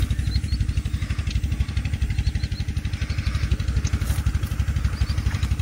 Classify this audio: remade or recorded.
recorded